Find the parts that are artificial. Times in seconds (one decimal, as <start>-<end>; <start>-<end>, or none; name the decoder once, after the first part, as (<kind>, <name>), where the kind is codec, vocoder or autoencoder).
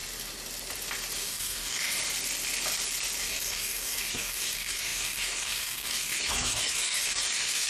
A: 1.2-2.0 (codec, DAC); 3.2-7.7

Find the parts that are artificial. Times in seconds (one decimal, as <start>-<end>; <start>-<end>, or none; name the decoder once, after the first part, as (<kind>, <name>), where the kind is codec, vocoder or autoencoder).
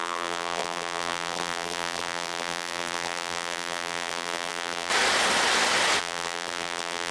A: 0.0-4.9 (vocoder, BigVGAN v2); 6.0-7.1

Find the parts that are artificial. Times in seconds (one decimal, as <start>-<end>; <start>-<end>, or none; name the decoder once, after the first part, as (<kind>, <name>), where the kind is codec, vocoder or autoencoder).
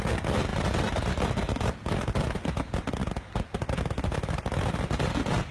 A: none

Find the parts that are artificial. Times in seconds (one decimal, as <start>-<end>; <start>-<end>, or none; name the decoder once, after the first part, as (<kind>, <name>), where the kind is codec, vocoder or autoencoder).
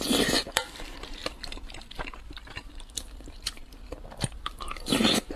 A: 0.0-5.4 (vocoder, BigVGAN v2)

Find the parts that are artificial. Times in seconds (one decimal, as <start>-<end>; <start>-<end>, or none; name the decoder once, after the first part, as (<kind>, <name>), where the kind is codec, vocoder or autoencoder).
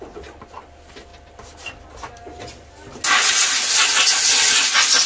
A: none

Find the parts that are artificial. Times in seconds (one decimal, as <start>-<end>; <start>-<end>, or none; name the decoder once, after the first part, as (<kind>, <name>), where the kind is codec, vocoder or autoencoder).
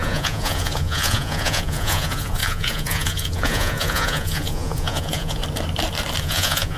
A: 0.0-5.4 (vocoder, Vocos); 6.2-6.8